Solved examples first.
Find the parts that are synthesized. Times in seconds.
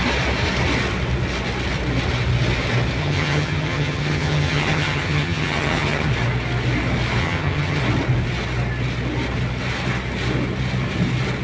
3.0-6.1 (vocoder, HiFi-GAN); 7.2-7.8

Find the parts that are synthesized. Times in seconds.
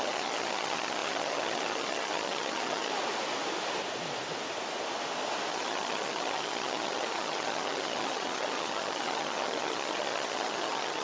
0.0-2.9 (vocoder, HiFi-GAN); 5.5-11.0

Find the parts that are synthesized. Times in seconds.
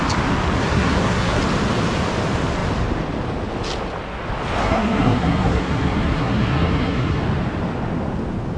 0.6-1.4 (codec, SNAC); 4.6-7.2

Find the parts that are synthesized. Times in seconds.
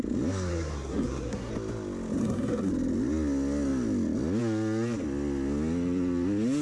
0.5-1.5 (codec, SNAC); 2.2-2.7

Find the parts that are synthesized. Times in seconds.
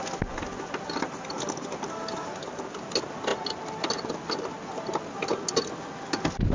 none